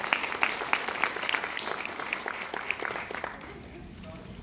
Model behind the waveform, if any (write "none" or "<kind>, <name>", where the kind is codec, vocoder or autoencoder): none